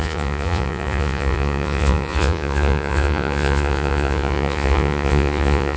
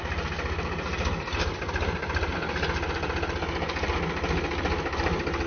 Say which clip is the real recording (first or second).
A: second